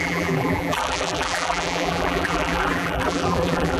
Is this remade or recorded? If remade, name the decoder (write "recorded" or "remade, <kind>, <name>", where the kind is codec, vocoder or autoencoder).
remade, vocoder, BigVGAN v2